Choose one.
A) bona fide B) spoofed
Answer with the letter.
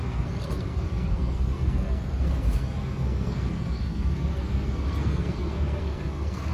B